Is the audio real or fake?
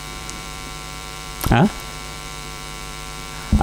fake